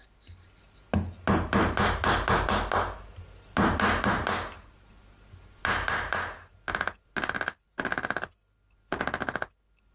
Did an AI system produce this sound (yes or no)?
no